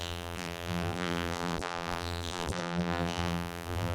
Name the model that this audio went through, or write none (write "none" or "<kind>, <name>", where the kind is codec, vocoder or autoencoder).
vocoder, BigVGAN v2